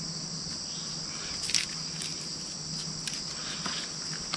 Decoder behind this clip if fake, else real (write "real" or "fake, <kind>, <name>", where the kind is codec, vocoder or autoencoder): real